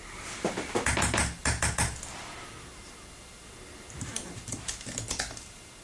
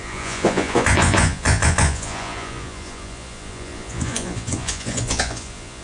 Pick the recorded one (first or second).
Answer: first